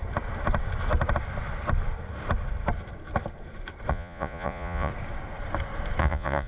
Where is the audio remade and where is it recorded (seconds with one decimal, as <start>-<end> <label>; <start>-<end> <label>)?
0.0-3.9 recorded; 3.9-4.9 remade; 4.9-6.0 recorded; 6.0-6.5 remade